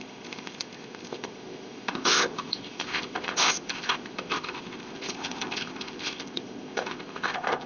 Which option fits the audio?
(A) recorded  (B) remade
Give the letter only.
B